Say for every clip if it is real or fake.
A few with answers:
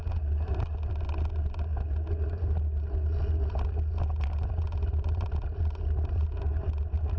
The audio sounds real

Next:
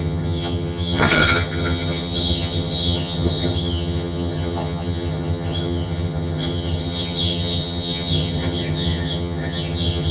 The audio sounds fake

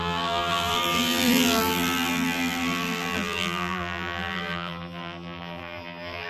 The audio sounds fake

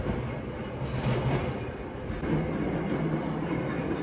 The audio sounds real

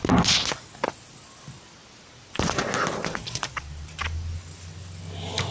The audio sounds real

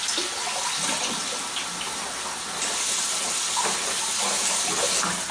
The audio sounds real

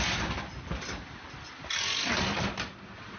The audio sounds real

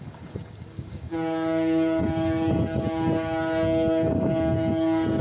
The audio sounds fake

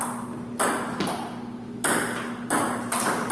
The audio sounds real